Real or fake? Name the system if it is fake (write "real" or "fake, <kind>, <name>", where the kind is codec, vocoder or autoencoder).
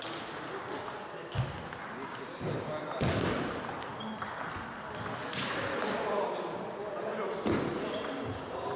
real